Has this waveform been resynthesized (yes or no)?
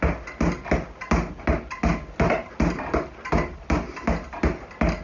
no